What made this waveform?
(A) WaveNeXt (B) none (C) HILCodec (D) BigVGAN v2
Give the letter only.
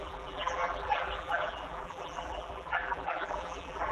D